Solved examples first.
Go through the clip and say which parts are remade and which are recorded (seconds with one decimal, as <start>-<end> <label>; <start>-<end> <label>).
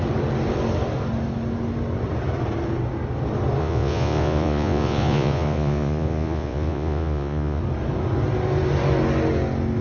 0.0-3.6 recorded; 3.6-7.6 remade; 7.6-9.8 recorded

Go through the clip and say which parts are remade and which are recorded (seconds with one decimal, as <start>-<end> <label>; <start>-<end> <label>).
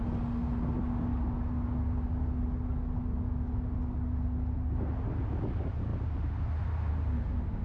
0.0-7.6 recorded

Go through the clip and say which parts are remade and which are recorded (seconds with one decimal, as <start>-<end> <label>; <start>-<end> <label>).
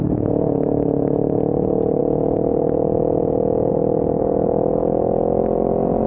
0.0-6.1 recorded